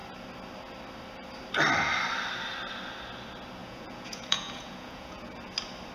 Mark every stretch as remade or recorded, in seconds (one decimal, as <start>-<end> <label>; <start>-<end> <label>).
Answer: 0.0-3.6 recorded; 3.6-5.4 remade; 5.4-5.9 recorded